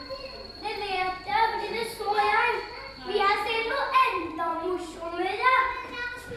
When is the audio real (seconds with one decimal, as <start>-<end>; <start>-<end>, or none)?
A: 1.8-2.7